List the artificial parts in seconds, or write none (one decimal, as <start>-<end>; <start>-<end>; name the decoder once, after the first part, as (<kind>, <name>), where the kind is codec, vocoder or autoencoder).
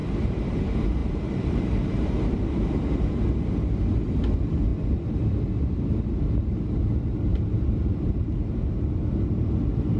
0.0-0.5 (vocoder, BigVGAN v2); 1.0-3.2; 7.3-8.2